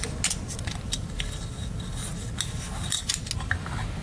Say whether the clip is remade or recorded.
recorded